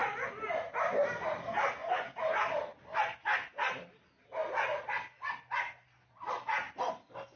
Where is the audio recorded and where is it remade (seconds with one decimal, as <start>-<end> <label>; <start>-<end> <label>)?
0.0-7.4 recorded